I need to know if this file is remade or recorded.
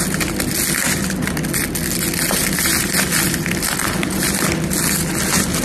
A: recorded